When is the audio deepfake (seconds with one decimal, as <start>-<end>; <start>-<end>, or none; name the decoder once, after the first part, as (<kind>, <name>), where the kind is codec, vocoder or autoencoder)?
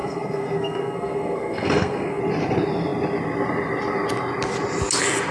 0.0-2.2 (codec, SNAC)